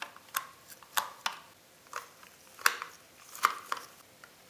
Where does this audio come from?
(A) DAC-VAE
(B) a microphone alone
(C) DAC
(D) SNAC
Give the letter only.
B